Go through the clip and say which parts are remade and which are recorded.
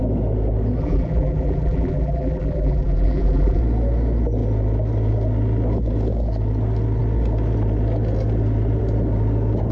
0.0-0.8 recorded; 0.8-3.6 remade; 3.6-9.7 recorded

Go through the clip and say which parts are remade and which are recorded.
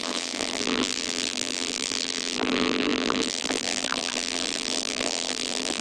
0.0-5.8 remade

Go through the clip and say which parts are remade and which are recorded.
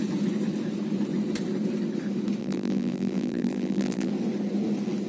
0.0-2.4 recorded; 2.4-4.1 remade; 4.1-5.1 recorded